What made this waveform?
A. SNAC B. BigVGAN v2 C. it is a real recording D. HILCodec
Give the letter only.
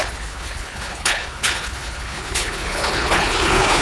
D